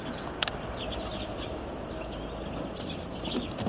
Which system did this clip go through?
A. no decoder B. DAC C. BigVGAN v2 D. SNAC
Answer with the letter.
A